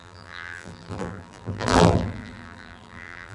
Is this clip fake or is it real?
fake